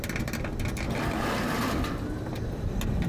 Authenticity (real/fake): real